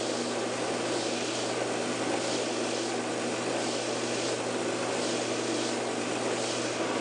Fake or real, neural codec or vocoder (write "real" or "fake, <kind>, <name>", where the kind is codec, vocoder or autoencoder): real